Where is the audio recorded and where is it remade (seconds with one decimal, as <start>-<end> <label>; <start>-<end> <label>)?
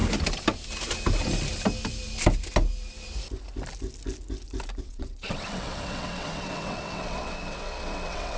0.0-4.8 recorded; 4.8-8.4 remade